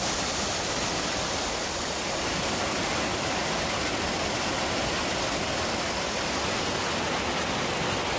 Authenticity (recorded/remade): recorded